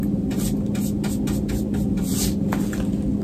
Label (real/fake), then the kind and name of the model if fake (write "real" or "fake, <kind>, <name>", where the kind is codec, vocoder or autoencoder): real